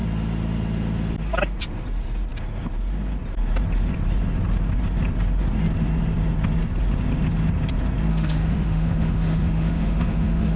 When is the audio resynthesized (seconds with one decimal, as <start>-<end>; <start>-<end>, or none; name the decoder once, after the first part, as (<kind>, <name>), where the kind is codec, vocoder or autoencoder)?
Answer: 8.1-10.6 (autoencoder, DAC-VAE)